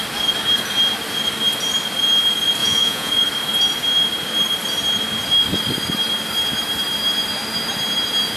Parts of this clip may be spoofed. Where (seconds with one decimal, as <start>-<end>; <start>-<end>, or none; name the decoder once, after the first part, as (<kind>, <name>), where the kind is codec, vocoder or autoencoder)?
2.6-3.1 (vocoder, Vocos)